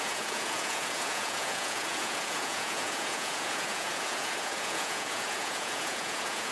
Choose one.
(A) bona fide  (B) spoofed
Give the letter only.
B